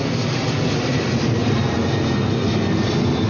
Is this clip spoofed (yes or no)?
no